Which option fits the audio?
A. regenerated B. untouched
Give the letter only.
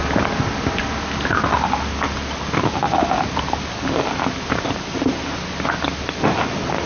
B